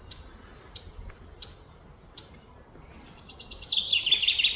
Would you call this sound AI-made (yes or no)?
no